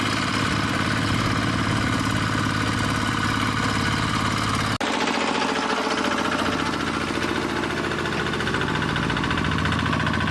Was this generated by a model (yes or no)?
no